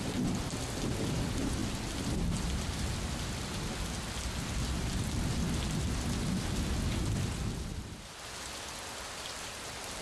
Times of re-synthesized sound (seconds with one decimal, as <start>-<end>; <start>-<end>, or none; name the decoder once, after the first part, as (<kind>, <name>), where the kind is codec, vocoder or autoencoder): none